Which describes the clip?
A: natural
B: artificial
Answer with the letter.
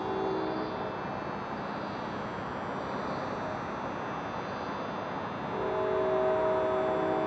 A